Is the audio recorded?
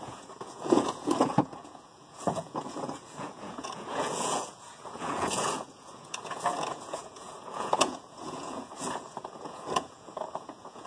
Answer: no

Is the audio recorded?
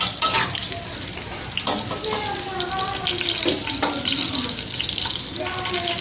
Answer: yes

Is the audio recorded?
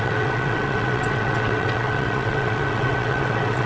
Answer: no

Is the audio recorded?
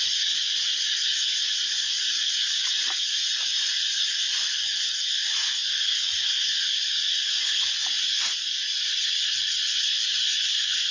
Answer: yes